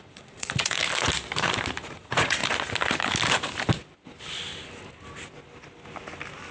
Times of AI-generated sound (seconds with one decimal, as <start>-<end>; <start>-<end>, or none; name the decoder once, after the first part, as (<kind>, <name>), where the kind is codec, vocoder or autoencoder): 0.0-0.8 (vocoder, Vocos); 1.8-2.4